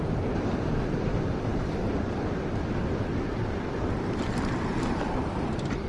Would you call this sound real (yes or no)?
no